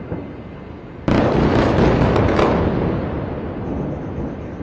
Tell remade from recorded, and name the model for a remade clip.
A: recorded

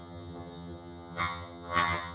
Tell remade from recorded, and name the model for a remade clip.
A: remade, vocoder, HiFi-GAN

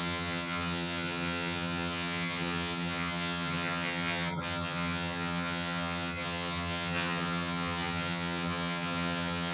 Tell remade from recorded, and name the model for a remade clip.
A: remade, vocoder, HiFi-GAN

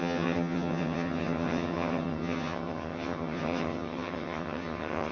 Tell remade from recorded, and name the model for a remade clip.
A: remade, vocoder, HiFi-GAN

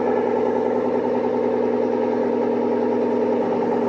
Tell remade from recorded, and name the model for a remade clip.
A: recorded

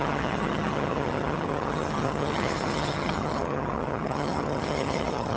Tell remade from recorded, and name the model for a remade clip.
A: remade, vocoder, HiFi-GAN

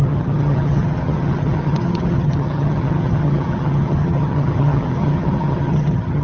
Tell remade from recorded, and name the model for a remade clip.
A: remade, vocoder, HiFi-GAN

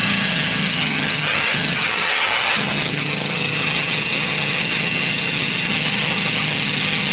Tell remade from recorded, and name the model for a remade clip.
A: remade, vocoder, HiFi-GAN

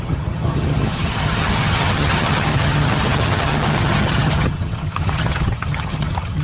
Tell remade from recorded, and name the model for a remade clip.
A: remade, vocoder, HiFi-GAN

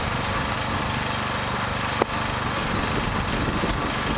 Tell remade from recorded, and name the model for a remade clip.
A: recorded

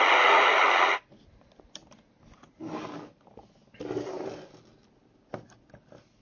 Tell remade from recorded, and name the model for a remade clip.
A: recorded